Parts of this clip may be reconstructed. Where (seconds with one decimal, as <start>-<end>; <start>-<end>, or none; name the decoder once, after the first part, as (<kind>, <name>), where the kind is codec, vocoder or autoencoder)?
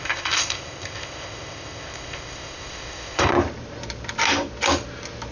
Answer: 0.0-3.3 (codec, ZipCodec)